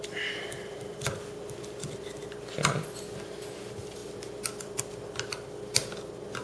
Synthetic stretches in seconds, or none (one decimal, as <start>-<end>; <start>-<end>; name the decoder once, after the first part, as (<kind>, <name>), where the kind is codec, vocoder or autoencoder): none